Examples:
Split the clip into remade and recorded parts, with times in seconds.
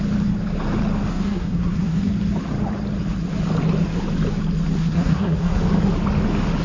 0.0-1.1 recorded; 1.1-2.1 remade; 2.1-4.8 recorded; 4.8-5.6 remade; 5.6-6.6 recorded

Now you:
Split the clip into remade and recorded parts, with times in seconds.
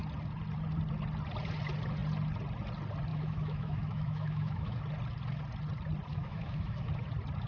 0.0-3.1 recorded; 3.1-4.8 remade; 4.8-6.1 recorded; 6.1-6.9 remade; 6.9-7.5 recorded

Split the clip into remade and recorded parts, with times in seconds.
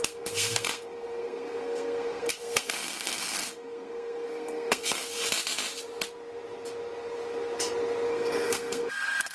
0.0-5.2 remade; 5.2-8.1 recorded; 8.1-9.3 remade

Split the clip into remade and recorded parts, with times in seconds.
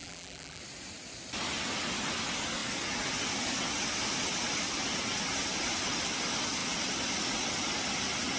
0.0-0.6 remade; 0.6-8.4 recorded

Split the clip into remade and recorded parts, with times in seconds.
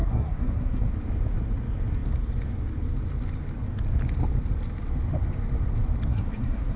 0.0-0.9 remade; 0.9-6.1 recorded; 6.1-6.8 remade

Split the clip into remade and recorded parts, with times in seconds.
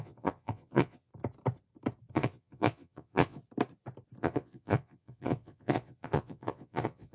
0.0-1.1 remade; 1.1-2.1 recorded; 2.1-3.4 remade; 3.4-4.2 recorded; 4.2-7.1 remade